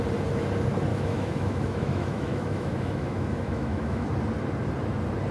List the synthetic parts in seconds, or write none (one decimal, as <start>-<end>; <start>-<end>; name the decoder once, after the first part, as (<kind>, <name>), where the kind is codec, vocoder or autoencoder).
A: 0.9-4.1 (autoencoder, DAC-VAE)